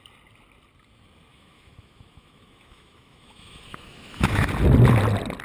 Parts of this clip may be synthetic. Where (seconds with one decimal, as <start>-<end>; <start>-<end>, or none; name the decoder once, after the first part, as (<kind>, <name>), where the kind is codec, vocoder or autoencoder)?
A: 1.3-4.5 (autoencoder, DAC-VAE)